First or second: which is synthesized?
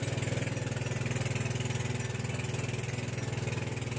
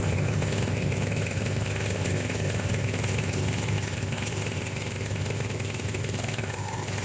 second